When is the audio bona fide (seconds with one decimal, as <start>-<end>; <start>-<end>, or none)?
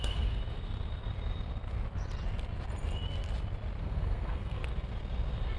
0.4-3.8; 4.6-5.6